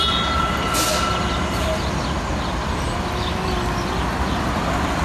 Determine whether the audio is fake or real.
real